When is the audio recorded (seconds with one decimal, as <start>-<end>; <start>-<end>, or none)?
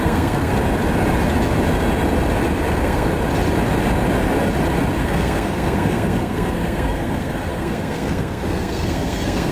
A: 0.5-2.7; 3.1-5.0